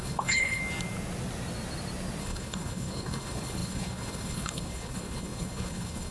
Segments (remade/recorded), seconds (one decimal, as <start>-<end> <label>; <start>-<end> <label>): 0.0-0.6 remade; 0.6-2.2 recorded; 2.2-6.1 remade